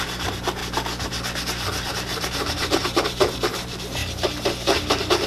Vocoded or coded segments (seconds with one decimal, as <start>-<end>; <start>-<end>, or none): 0.0-0.6; 1.9-4.0